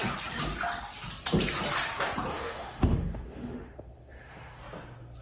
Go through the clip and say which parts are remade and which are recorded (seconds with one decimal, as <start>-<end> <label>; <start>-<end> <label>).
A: 0.0-2.3 recorded; 2.3-4.6 remade; 4.6-5.2 recorded